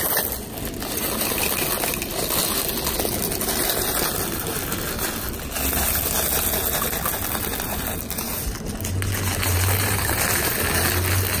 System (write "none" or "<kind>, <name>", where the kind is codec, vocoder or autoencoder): none